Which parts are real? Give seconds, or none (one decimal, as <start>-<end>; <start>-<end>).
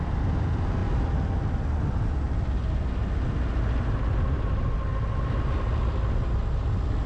0.0-7.1